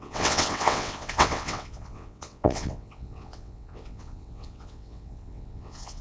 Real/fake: fake